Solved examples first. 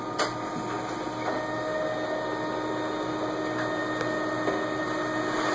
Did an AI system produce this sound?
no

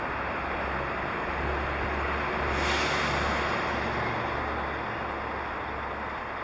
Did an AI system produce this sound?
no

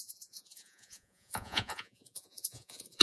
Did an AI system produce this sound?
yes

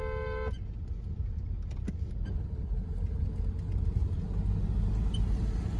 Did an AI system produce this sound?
no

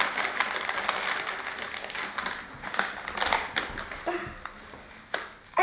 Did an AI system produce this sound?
no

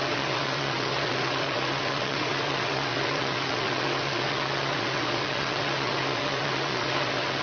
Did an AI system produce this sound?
yes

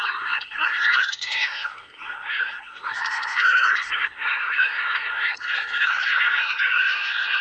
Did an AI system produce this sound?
yes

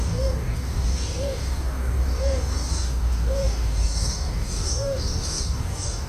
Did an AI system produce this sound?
yes